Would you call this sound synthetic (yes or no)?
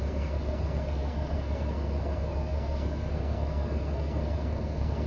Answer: yes